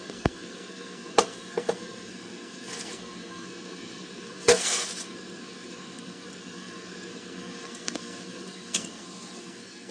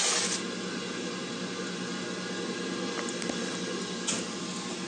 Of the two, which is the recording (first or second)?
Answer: second